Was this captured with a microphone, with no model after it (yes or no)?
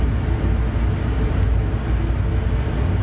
yes